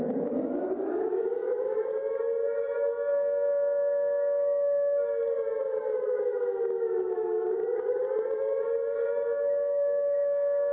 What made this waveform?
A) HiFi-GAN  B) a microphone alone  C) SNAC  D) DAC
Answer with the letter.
D